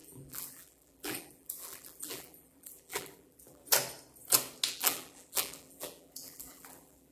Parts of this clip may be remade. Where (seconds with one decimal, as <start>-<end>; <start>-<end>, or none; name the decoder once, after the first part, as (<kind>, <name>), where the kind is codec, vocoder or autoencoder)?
0.0-3.6 (vocoder, BigVGAN v2); 4.7-7.1